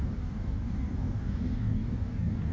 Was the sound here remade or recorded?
remade